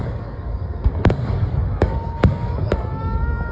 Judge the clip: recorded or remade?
remade